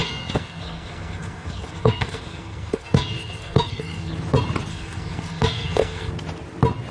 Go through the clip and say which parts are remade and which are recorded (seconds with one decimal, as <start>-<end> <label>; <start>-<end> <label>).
0.0-4.1 remade; 4.1-4.7 recorded; 4.7-6.1 remade; 6.1-6.9 recorded